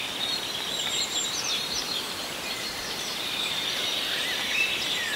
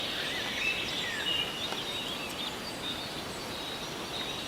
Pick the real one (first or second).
second